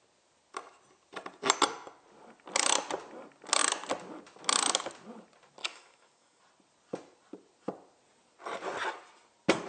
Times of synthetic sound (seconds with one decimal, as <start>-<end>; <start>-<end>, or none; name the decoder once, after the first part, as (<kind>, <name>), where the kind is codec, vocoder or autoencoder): 5.6-6.4 (codec, DAC)